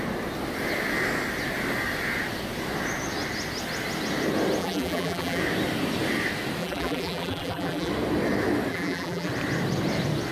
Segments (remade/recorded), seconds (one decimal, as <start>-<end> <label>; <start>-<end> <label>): 0.0-4.6 recorded; 4.6-5.4 remade; 5.4-6.6 recorded; 6.6-7.9 remade; 7.9-8.7 recorded; 8.7-9.3 remade; 9.3-10.3 recorded